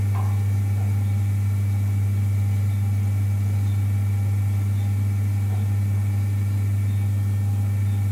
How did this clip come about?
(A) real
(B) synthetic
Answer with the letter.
A